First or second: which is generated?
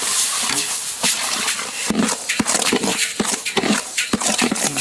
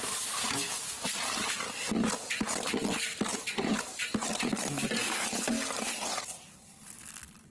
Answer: first